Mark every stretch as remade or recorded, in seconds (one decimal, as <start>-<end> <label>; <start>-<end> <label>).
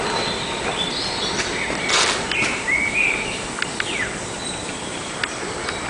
0.0-4.6 recorded; 4.6-5.2 remade; 5.2-5.9 recorded